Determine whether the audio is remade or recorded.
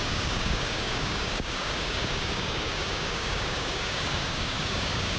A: remade